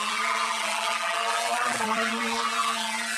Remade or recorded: remade